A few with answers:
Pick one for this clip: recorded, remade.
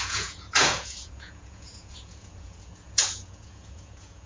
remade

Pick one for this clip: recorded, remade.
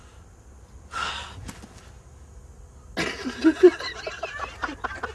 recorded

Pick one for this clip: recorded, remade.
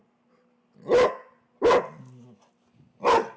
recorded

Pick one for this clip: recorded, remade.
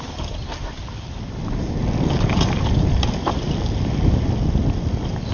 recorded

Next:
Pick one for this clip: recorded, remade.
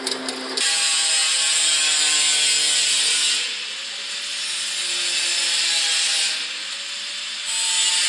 recorded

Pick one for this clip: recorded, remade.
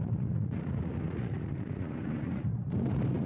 remade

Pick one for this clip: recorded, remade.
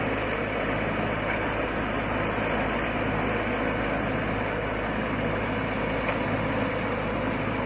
recorded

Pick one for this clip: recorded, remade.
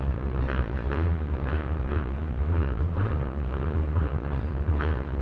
remade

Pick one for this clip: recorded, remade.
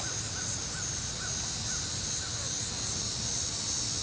recorded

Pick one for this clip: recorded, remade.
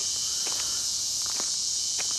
remade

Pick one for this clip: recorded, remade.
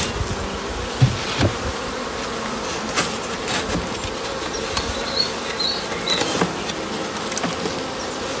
recorded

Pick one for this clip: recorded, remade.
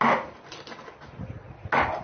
recorded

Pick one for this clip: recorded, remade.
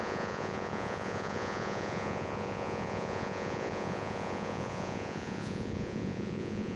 remade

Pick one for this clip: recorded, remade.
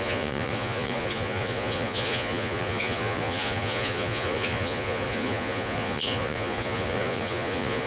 remade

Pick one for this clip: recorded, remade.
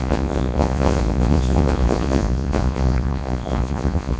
remade